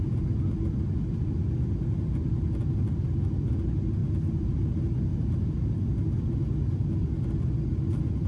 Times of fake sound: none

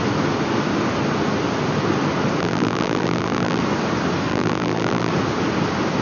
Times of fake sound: 2.4-3.6 (vocoder, BigVGAN v2); 4.3-5.1

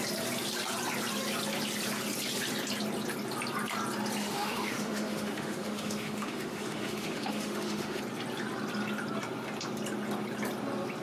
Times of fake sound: 4.2-8.0 (autoencoder, DAC-VAE)

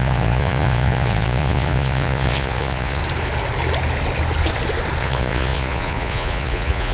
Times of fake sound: 0.0-3.0 (vocoder, Vocos); 5.0-6.9